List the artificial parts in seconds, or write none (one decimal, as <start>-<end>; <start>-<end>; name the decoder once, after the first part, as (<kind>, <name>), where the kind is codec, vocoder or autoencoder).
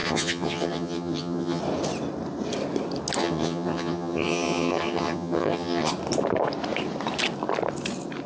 0.0-1.6 (vocoder, HiFi-GAN); 3.2-5.9